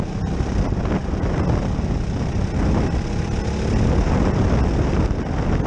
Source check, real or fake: real